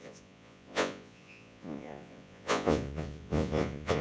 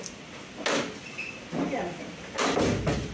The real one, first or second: second